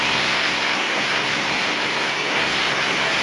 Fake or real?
fake